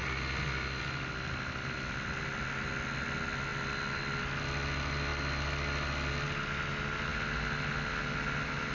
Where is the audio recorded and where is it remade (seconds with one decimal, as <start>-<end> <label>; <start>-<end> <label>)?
0.0-8.7 recorded